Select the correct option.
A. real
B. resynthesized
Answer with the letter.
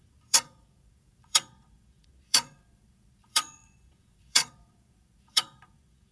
B